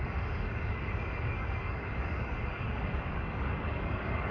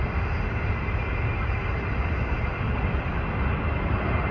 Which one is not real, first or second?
first